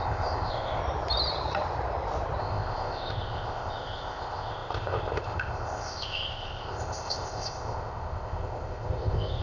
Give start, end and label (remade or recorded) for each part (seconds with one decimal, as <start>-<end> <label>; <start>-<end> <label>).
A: 0.0-0.8 remade; 0.8-2.4 recorded; 2.4-9.4 remade